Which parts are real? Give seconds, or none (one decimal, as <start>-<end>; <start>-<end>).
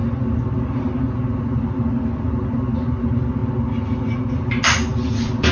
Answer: 0.0-5.5